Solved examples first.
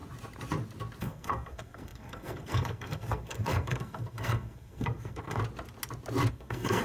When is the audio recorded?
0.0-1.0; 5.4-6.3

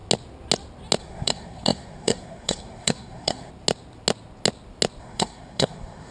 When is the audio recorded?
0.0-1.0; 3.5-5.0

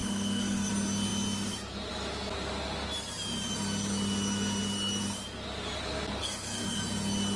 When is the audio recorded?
0.7-6.2; 6.8-7.4

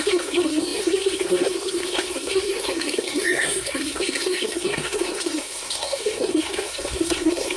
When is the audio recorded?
none

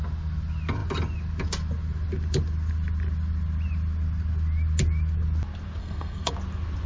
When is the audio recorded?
0.0-5.8; 6.3-6.9